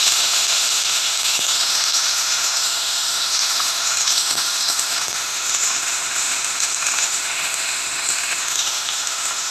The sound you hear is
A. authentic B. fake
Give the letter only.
B